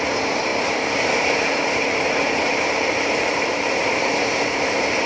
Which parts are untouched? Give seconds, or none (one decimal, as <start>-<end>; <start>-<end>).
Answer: none